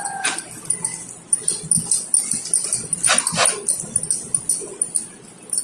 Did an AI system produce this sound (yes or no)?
no